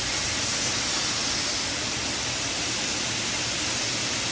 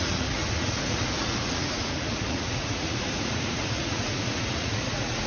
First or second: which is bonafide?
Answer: first